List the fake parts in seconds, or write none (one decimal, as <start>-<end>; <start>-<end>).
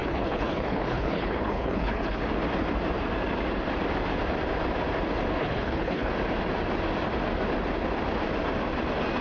0.0-2.2; 5.4-6.1